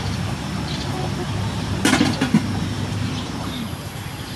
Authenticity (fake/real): fake